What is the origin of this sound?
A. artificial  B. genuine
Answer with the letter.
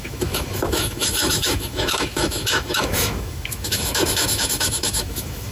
A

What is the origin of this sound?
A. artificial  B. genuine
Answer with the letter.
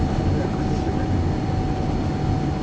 B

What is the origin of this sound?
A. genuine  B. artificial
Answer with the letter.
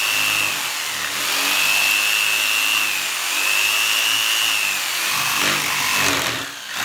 A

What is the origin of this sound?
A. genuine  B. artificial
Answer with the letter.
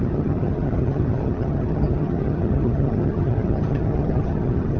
B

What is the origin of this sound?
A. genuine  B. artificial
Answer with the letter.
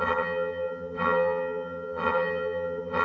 B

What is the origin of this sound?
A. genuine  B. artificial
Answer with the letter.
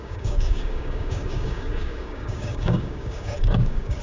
B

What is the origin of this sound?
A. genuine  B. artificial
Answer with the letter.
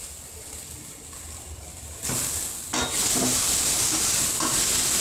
A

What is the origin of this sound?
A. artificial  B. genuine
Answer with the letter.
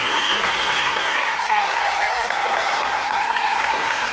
A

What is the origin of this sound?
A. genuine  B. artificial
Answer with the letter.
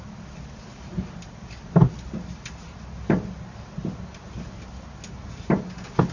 A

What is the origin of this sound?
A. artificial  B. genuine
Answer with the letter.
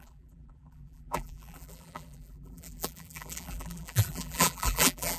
A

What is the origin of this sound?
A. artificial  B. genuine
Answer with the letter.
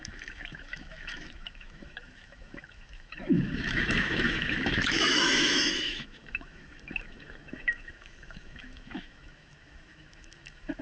A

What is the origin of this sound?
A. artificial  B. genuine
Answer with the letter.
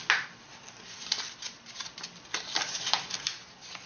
B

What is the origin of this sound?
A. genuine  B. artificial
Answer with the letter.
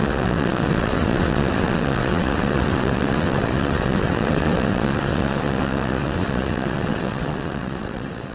B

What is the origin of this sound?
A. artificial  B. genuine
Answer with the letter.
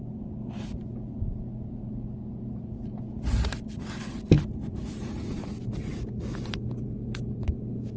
B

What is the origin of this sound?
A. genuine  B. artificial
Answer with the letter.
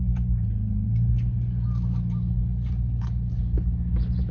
A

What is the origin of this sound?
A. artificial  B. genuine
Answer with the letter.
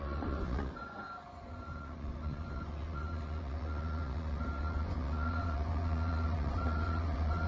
A